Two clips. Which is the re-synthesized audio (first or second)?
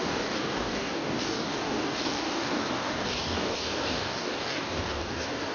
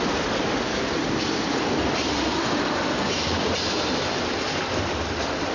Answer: first